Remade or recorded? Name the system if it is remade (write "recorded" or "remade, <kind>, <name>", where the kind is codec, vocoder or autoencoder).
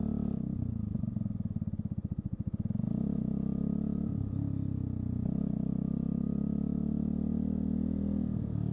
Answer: recorded